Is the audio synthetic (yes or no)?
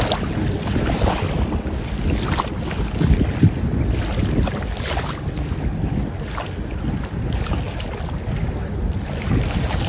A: no